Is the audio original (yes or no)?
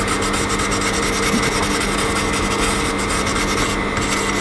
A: yes